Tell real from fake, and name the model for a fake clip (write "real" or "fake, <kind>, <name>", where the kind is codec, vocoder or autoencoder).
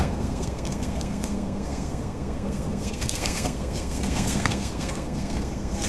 fake, codec, SNAC